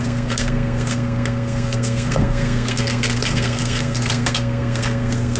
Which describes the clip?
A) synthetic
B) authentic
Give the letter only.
A